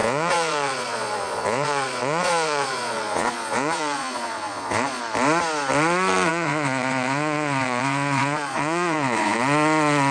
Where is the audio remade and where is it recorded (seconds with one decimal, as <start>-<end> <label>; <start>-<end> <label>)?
0.0-5.0 remade; 5.0-6.3 recorded; 6.3-9.4 remade; 9.4-10.1 recorded